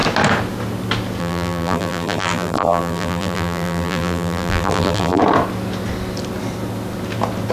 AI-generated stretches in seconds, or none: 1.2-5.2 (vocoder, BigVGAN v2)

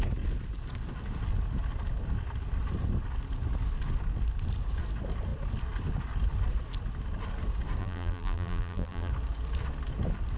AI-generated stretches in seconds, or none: 7.8-9.1 (vocoder, BigVGAN v2)

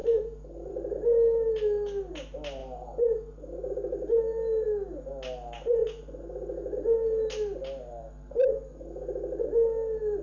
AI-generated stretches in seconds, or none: none

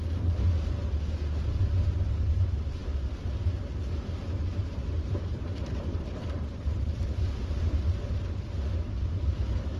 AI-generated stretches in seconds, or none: 4.5-7.0 (vocoder, BigVGAN v2)

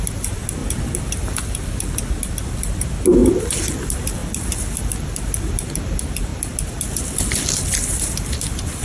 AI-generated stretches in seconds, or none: 0.0-0.6 (vocoder, BigVGAN v2); 2.3-3.2; 3.8-4.2; 4.8-6.3; 7.4-8.8

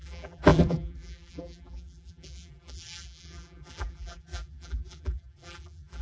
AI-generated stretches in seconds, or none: 0.0-6.0 (vocoder, BigVGAN v2)